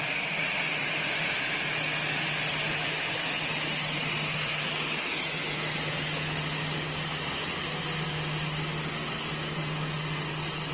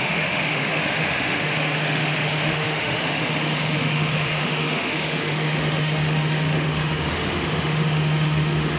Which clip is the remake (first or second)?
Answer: second